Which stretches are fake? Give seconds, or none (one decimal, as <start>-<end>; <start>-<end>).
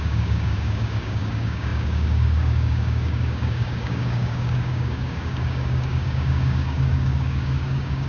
0.0-8.1